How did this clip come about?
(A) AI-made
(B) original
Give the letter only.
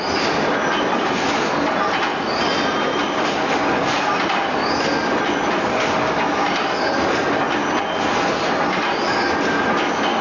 B